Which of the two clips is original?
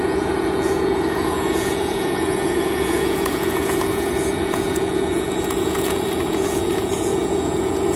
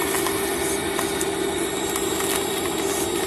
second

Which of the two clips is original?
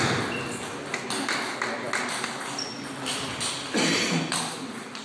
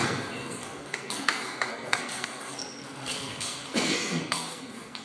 first